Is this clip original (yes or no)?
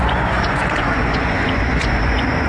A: no